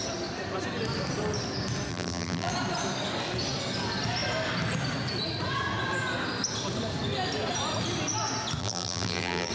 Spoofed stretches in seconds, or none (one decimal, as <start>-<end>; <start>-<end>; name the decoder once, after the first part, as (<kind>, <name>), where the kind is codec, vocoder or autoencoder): 1.9-2.5 (vocoder, BigVGAN v2); 8.6-9.5

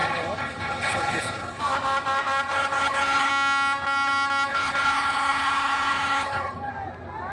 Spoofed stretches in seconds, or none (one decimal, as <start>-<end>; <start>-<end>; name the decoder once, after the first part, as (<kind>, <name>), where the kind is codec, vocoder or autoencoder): 0.0-1.6 (codec, HILCodec); 2.5-3.3; 4.5-6.7

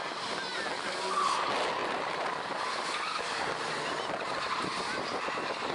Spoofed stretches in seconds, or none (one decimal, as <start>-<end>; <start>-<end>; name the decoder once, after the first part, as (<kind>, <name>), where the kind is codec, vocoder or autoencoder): none

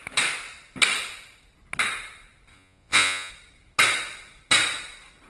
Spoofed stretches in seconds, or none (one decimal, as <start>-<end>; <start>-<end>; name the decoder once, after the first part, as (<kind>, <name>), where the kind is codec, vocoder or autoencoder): 2.5-3.3 (vocoder, Vocos)

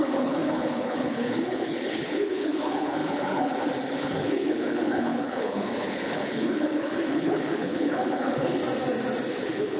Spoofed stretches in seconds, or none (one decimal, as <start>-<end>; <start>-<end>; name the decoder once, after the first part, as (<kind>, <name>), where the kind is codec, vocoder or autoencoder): 0.0-8.6 (codec, HILCodec); 9.3-9.8

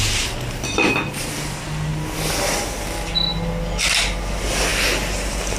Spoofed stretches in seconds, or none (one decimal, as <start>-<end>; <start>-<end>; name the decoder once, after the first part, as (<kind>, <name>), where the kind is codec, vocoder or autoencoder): 3.3-4.0 (vocoder, BigVGAN v2); 4.7-5.6